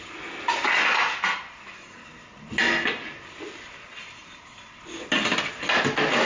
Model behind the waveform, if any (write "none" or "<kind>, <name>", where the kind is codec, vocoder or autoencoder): none